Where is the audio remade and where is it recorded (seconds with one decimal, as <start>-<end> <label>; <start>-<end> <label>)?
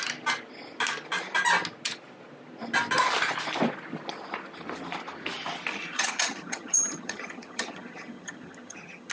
0.0-5.7 recorded; 5.7-9.1 remade